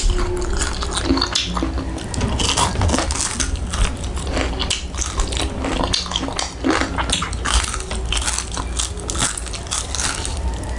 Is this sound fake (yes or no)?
no